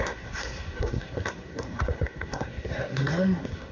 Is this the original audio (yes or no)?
no